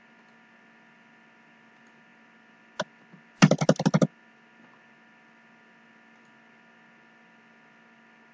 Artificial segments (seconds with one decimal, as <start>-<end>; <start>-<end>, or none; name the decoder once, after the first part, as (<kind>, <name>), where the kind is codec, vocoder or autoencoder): none